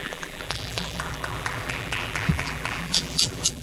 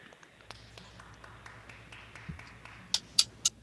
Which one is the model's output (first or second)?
first